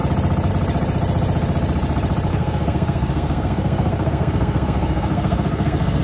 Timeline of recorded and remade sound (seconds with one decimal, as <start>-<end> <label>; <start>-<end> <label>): 0.0-2.3 recorded; 2.3-6.0 remade